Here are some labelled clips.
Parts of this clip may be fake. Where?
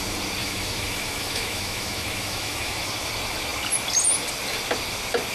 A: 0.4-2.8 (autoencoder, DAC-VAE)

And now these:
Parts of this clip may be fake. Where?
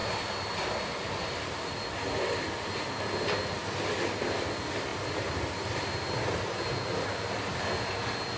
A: none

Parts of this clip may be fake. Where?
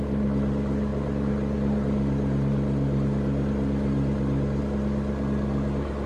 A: none